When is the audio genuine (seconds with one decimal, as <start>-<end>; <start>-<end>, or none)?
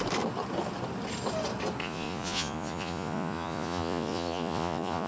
0.0-1.8